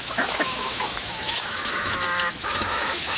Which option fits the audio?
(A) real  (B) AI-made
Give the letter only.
B